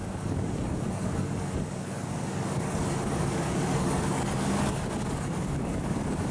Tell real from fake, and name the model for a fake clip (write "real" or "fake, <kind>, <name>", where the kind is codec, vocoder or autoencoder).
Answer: fake, codec, DAC